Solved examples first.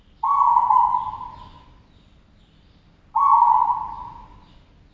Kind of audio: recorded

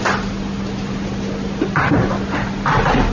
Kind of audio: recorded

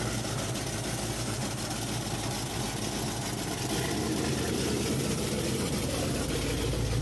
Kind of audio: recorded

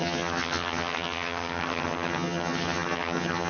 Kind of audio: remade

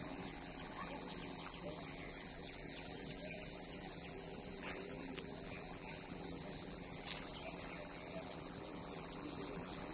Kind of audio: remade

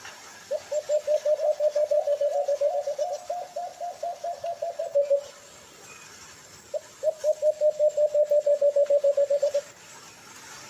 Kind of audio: recorded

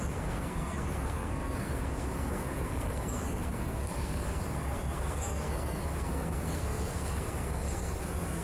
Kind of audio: remade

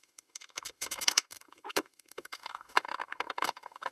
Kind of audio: remade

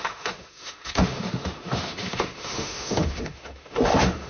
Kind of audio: remade